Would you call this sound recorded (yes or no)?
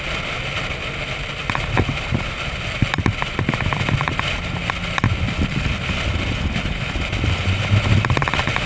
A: yes